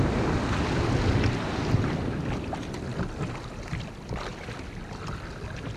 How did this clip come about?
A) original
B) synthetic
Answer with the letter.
A